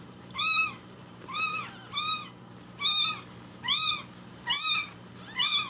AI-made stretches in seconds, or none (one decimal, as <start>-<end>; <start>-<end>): 0.0-1.5; 4.3-5.7